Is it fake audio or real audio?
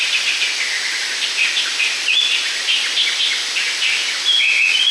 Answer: real